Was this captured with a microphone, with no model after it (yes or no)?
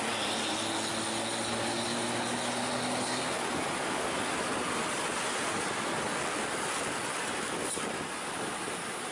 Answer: yes